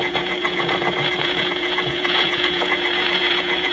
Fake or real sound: fake